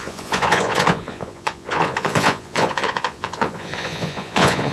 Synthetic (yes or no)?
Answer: yes